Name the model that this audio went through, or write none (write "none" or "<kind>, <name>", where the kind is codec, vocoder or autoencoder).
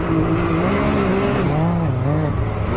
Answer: none